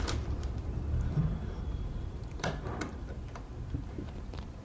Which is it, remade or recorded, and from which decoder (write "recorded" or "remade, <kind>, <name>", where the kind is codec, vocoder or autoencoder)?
remade, vocoder, BigVGAN v2